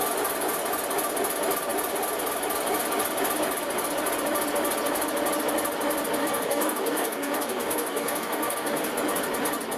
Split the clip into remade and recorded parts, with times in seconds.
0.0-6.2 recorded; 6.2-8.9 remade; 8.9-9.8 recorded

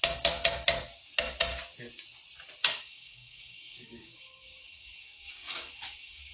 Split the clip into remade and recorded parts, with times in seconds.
0.0-2.6 recorded; 2.6-6.3 remade

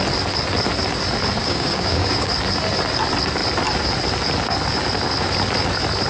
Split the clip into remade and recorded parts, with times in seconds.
0.0-1.4 recorded; 1.4-2.3 remade; 2.3-6.1 recorded

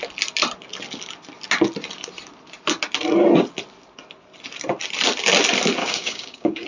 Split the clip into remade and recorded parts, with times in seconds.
0.0-5.8 recorded; 5.8-6.7 remade

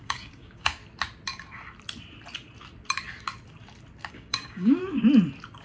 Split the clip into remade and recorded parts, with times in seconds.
0.0-0.8 remade; 0.8-4.1 recorded; 4.1-4.8 remade; 4.8-5.6 recorded

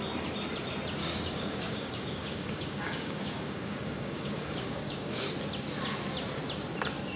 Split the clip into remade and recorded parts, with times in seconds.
0.0-1.0 recorded; 1.0-5.3 remade; 5.3-7.2 recorded

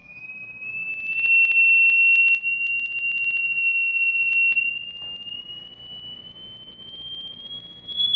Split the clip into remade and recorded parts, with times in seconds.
0.0-0.9 remade; 0.9-3.4 recorded; 3.4-4.3 remade; 4.3-8.2 recorded